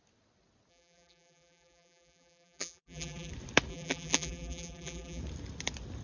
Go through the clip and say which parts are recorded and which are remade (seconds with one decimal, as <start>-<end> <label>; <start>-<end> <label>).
0.0-0.7 recorded; 0.7-3.3 remade; 3.3-3.7 recorded; 3.7-5.2 remade; 5.2-6.0 recorded